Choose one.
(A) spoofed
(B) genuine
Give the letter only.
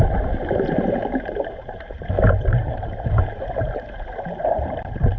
A